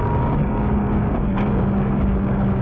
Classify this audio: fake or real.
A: fake